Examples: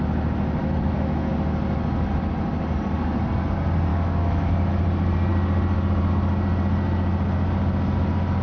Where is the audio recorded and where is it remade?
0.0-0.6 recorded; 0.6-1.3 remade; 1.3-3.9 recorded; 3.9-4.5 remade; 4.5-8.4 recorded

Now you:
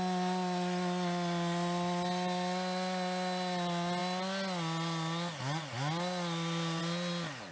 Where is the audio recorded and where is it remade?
0.0-7.5 recorded

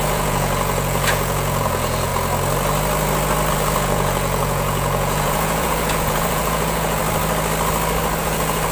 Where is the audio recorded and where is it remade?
0.0-2.1 remade; 2.1-3.5 recorded; 3.5-7.0 remade; 7.0-8.2 recorded; 8.2-8.7 remade

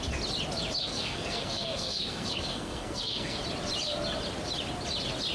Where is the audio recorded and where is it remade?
0.0-0.8 recorded; 0.8-3.4 remade; 3.4-5.3 recorded

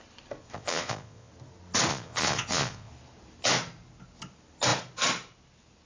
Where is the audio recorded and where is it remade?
0.0-0.4 recorded; 0.4-1.3 remade; 1.3-1.9 recorded; 1.9-2.9 remade; 2.9-5.9 recorded

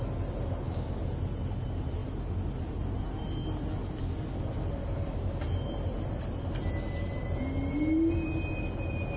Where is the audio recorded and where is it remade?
0.0-9.2 recorded

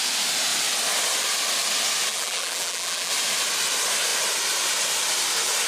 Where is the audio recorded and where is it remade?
0.0-2.1 recorded; 2.1-3.1 remade; 3.1-5.7 recorded